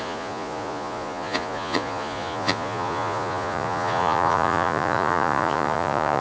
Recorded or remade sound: remade